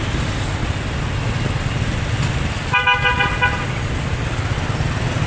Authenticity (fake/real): real